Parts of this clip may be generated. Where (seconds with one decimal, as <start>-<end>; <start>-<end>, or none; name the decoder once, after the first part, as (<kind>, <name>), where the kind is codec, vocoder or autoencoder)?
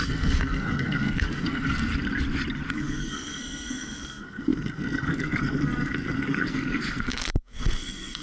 0.0-1.9 (codec, SNAC); 2.7-8.2